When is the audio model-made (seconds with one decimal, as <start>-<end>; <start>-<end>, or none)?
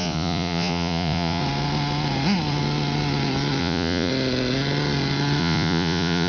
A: 0.0-1.4; 3.6-4.1; 5.4-6.3